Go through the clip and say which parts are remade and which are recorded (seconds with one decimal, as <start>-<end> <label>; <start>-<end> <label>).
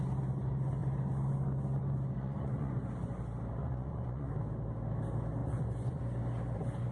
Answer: 0.0-2.2 recorded; 2.2-2.7 remade; 2.7-3.6 recorded; 3.6-4.3 remade; 4.3-5.4 recorded; 5.4-6.0 remade; 6.0-6.9 recorded